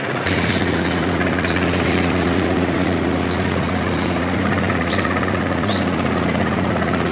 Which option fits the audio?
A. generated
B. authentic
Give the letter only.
A